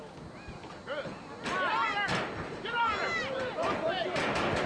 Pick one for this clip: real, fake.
real